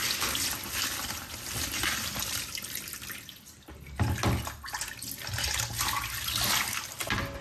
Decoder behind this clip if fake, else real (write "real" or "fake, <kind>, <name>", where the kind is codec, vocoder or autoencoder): real